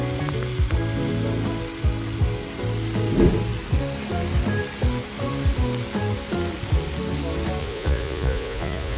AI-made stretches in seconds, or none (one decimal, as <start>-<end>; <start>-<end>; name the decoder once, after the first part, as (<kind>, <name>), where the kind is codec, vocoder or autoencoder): 7.6-9.0 (vocoder, Vocos)